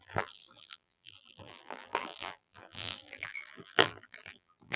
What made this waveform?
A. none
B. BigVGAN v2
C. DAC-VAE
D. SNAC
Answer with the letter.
B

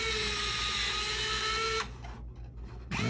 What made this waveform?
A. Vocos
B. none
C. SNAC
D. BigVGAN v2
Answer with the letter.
B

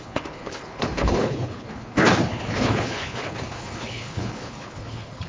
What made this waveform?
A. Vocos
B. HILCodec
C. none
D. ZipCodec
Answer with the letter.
B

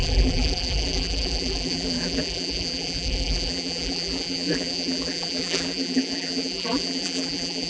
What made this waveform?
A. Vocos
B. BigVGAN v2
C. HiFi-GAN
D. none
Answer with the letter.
B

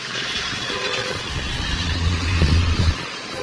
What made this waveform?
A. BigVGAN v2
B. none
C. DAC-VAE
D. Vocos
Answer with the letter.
D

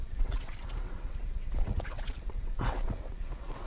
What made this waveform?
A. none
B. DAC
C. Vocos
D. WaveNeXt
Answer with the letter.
D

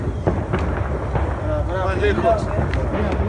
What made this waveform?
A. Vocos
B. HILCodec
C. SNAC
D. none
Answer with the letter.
D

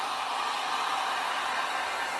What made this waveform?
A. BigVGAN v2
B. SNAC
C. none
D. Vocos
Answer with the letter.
C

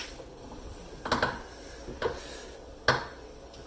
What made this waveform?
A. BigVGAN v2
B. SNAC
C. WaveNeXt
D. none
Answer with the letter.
D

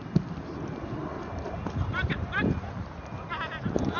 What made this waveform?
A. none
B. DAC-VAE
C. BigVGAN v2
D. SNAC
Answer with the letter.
A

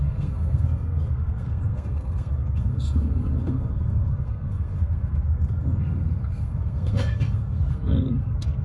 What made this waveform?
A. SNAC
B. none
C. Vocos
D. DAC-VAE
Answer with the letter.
A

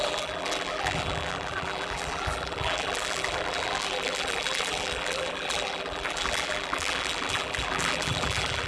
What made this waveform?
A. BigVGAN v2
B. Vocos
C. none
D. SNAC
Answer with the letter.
A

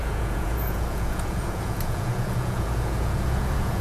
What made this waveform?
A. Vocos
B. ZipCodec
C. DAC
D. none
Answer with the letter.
A